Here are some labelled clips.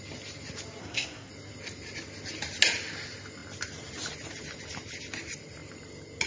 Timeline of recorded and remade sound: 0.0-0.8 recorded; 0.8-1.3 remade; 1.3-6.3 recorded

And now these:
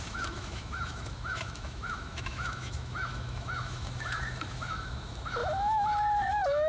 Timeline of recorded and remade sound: 0.0-6.7 remade

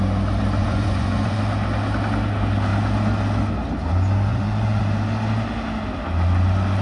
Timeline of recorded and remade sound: 0.0-0.6 recorded; 0.6-1.4 remade; 1.4-4.3 recorded; 4.3-4.8 remade; 4.8-6.8 recorded

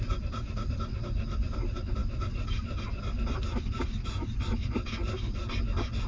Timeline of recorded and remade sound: 0.0-6.1 recorded

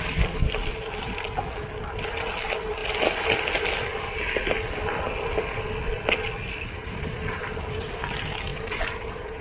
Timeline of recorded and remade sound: 0.0-6.8 recorded; 6.8-7.4 remade; 7.4-8.5 recorded; 8.5-9.4 remade

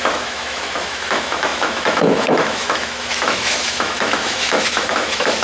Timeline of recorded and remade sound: 0.0-5.4 remade

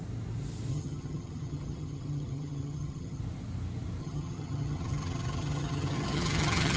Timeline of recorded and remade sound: 0.0-0.7 recorded; 0.7-3.2 remade; 3.2-4.0 recorded; 4.0-6.8 remade

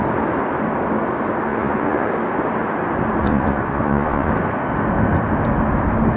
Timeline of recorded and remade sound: 0.0-1.5 recorded; 1.5-2.1 remade; 2.1-3.2 recorded; 3.2-4.3 remade; 4.3-6.2 recorded